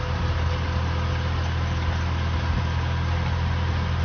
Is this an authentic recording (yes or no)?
yes